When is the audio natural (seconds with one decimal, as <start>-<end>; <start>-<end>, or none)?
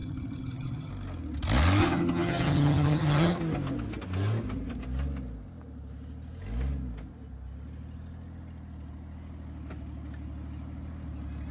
0.9-1.8; 3.4-11.5